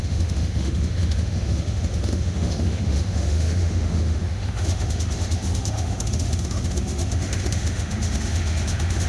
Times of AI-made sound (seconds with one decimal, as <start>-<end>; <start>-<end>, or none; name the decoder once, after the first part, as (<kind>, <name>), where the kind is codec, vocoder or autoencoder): 0.0-9.1 (autoencoder, DAC-VAE)